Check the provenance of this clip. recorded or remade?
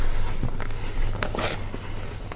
recorded